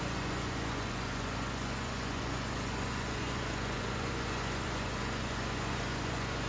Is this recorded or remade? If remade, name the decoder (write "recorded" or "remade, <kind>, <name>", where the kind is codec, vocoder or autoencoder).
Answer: remade, vocoder, Vocos